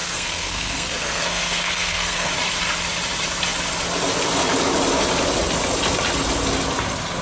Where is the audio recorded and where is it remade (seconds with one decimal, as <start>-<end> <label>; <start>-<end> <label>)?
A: 0.0-2.3 remade; 2.3-7.2 recorded